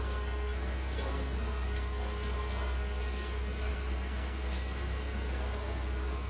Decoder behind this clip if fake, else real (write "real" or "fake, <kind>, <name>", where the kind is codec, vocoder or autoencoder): fake, codec, SNAC